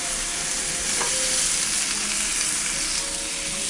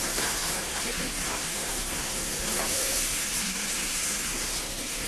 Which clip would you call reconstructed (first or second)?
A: second